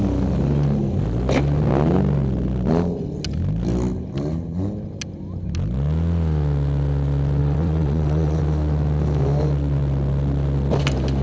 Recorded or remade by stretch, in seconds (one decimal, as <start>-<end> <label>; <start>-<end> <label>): 0.0-7.4 recorded; 7.4-8.4 remade; 8.4-11.2 recorded